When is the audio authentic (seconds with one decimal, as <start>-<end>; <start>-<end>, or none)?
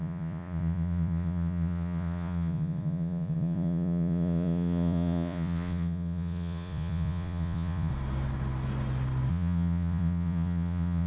7.9-9.3